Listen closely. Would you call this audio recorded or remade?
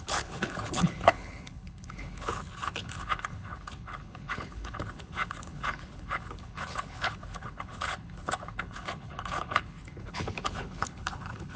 remade